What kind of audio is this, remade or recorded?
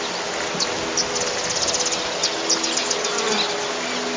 recorded